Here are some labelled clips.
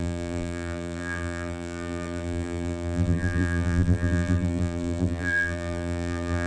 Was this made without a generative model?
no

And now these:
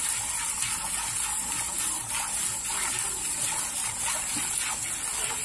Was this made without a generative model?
yes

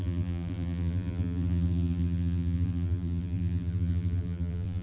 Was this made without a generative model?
no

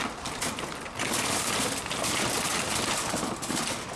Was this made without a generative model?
yes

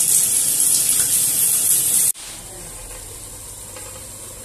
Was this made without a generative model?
yes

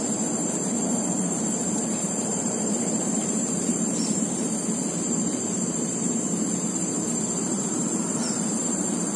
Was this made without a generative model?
no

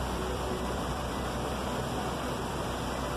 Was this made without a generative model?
no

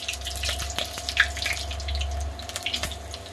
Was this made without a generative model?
yes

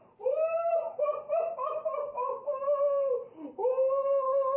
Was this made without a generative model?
no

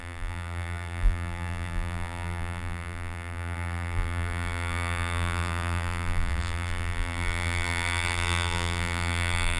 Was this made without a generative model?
no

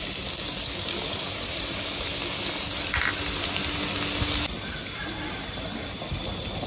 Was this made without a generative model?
yes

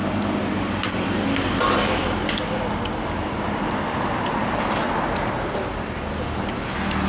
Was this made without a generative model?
yes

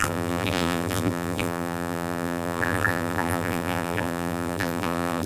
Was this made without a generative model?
no